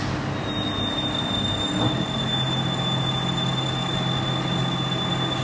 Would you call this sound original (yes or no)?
yes